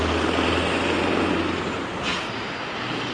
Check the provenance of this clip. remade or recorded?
recorded